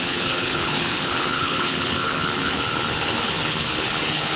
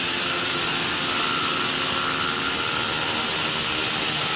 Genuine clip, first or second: second